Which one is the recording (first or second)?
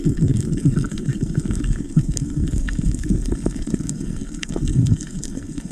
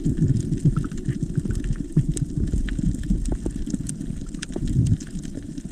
second